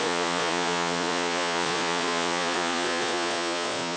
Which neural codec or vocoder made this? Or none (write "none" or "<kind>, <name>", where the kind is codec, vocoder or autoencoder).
vocoder, Vocos